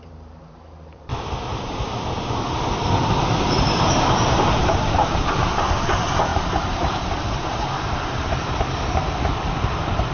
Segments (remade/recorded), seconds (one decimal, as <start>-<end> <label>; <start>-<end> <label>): 0.0-1.1 remade; 1.1-3.0 recorded; 3.0-10.1 remade